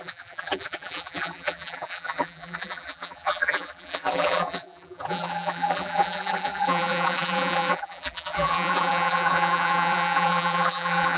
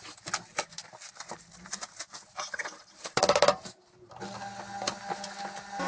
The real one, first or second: second